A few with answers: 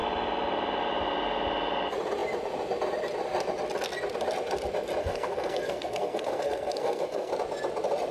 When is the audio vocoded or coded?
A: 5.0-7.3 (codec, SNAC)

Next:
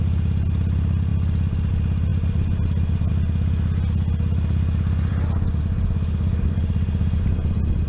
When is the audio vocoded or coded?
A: none

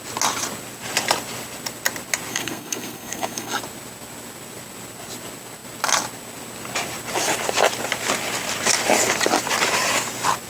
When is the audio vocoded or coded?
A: 2.3-3.6 (codec, SNAC)

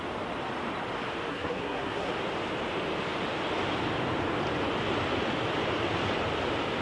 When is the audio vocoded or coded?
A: 1.3-2.1 (codec, SNAC)

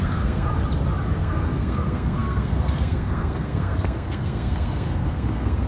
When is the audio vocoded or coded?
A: 0.0-0.5 (codec, SNAC); 1.2-5.7

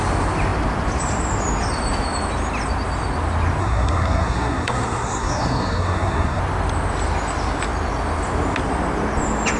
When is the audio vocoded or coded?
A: 3.6-6.4 (codec, SNAC)

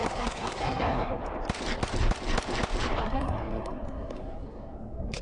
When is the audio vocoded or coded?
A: 0.0-1.2 (codec, SNAC); 3.0-5.2

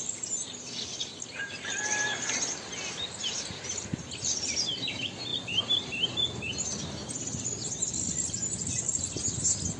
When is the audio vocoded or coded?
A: none